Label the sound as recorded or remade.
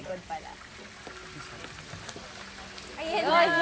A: recorded